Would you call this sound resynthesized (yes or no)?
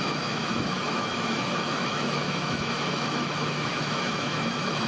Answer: yes